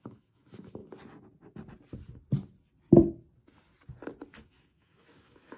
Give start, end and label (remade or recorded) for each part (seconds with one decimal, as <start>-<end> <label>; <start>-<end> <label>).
0.0-0.8 remade; 0.8-4.2 recorded; 4.2-5.6 remade